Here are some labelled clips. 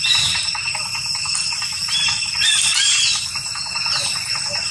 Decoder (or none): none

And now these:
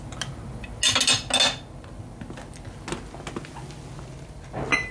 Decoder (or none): none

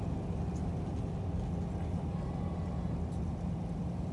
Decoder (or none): none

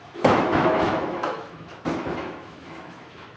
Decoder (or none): autoencoder, DAC-VAE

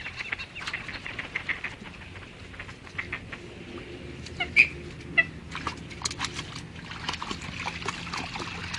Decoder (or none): none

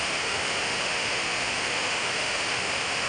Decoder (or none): autoencoder, DAC-VAE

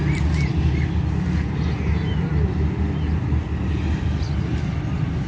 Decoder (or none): none